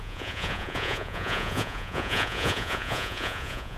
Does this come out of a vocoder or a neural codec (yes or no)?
yes